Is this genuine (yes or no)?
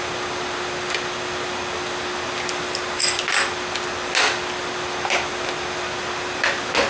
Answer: yes